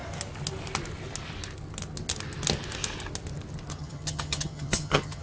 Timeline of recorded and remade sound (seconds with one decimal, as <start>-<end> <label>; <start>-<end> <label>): 0.0-3.7 recorded; 3.7-5.2 remade